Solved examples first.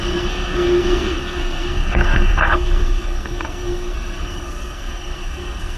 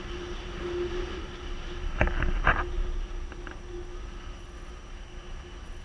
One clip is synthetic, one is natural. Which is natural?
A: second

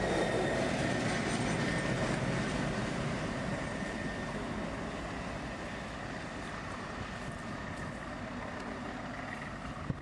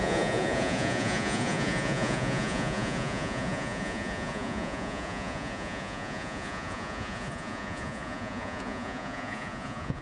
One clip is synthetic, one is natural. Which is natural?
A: first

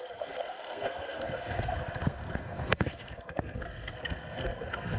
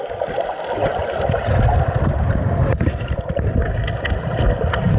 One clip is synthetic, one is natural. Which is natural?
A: second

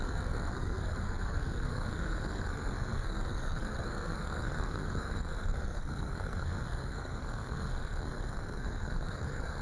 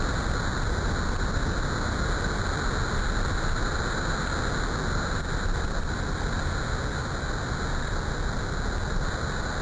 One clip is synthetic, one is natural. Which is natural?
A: second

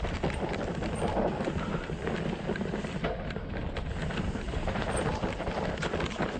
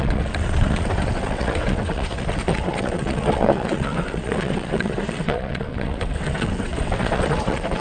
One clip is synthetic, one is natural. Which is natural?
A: first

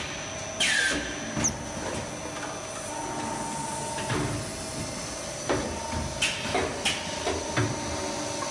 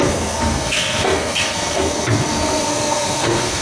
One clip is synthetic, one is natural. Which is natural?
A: first